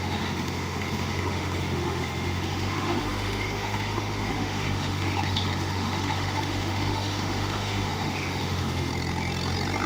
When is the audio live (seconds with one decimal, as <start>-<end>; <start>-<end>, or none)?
8.9-9.9